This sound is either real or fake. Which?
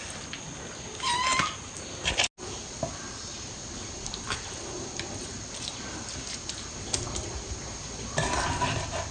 real